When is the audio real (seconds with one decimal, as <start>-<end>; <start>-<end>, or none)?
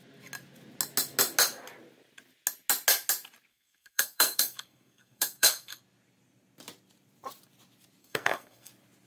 0.0-3.5; 5.8-8.0; 8.7-9.1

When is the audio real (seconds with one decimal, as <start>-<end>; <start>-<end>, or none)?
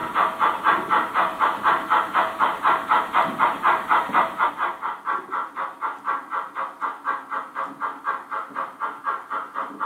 4.5-9.9